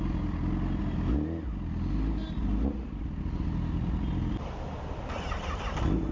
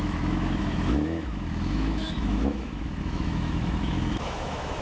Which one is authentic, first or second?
first